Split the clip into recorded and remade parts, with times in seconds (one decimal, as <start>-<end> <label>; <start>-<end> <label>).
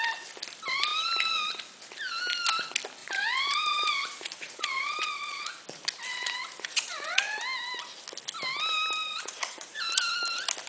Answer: 0.0-3.0 recorded; 3.0-5.6 remade; 5.6-6.1 recorded; 6.1-7.4 remade; 7.4-9.1 recorded; 9.1-9.9 remade; 9.9-10.7 recorded